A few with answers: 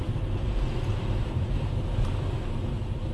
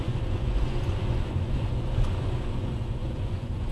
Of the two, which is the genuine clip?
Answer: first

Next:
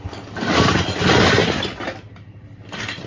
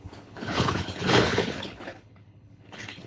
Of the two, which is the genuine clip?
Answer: first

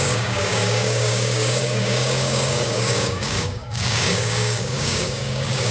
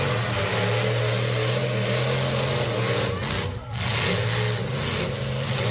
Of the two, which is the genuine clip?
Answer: second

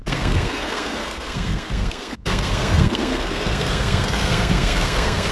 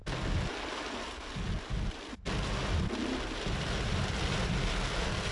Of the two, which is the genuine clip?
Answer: second